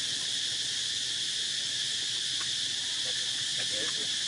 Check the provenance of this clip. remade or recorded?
recorded